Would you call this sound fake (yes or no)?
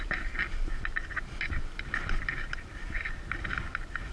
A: no